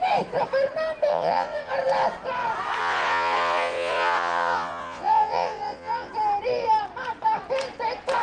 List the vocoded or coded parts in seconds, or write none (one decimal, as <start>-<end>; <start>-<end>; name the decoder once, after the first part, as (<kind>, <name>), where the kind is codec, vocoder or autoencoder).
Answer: 1.1-1.7 (vocoder, Vocos); 2.8-6.1